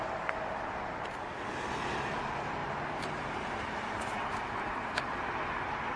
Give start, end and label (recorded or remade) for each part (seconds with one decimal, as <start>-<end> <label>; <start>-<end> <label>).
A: 0.0-2.6 recorded; 2.6-4.0 remade; 4.0-6.0 recorded